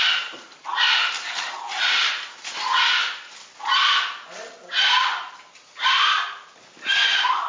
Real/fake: real